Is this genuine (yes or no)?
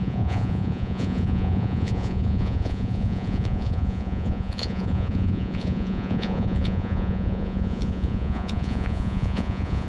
no